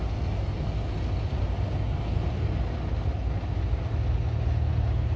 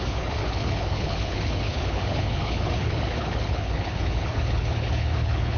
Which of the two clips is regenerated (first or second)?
second